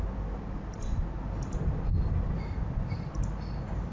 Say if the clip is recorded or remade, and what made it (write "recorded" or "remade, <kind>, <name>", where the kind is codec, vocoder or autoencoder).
recorded